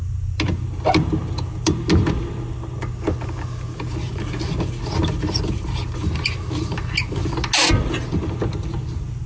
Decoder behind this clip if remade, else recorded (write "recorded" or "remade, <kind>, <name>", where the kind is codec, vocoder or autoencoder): recorded